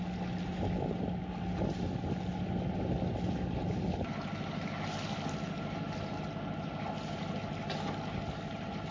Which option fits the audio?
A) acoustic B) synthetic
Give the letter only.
A